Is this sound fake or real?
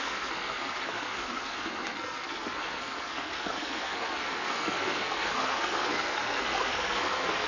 fake